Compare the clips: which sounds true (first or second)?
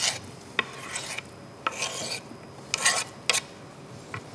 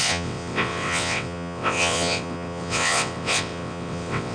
first